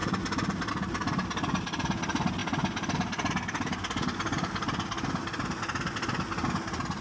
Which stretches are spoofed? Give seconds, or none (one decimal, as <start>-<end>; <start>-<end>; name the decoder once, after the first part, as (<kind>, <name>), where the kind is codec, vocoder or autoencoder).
none